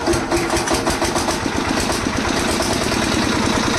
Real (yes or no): yes